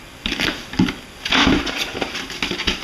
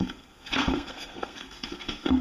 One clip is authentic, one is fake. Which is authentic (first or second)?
first